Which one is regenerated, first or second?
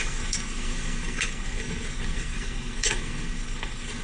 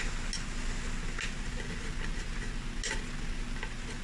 first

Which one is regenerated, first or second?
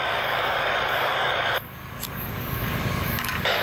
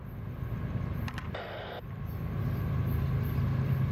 first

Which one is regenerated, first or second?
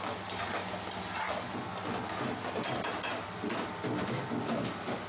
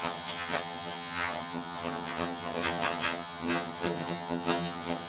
second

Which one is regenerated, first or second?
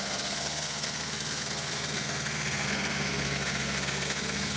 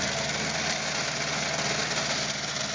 first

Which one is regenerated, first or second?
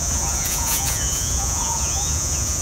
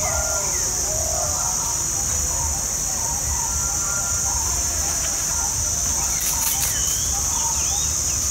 first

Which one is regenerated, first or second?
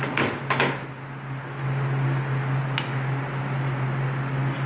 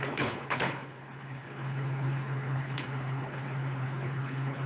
second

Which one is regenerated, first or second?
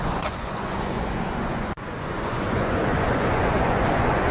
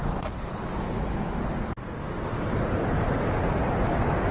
first